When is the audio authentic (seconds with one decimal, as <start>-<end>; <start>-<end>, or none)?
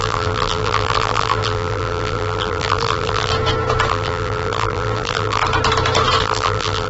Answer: 3.3-3.9; 5.4-6.2